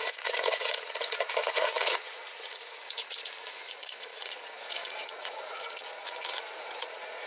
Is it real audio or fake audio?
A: fake